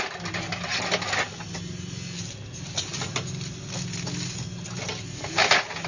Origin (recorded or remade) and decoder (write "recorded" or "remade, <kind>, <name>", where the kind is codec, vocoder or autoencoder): recorded